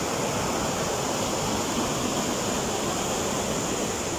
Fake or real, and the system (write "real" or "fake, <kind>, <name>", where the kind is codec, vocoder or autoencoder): fake, vocoder, BigVGAN v2